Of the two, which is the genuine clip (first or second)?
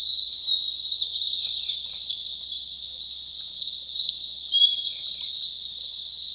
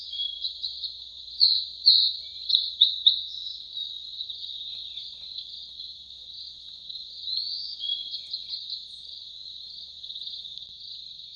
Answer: first